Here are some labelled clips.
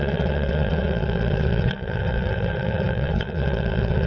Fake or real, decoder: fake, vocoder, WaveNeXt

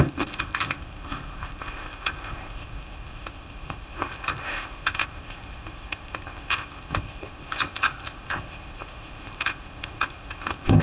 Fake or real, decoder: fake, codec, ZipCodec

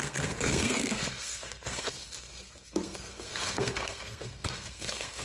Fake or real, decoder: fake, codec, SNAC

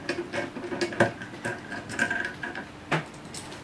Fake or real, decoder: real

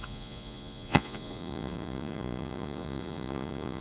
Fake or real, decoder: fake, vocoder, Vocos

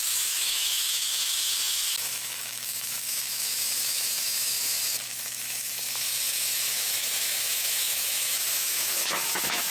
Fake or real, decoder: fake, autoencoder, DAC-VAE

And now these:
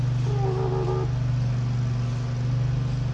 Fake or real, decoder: real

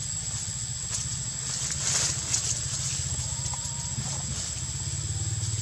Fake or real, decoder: real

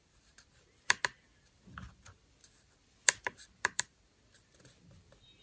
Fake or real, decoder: fake, vocoder, BigVGAN v2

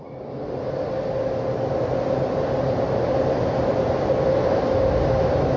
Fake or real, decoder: real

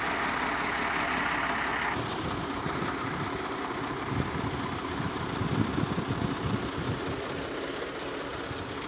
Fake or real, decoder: real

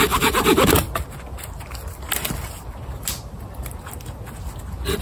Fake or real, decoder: real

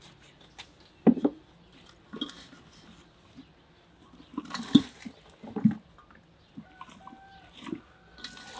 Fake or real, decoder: real